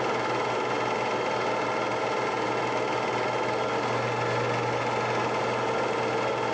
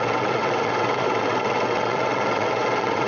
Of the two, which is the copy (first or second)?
second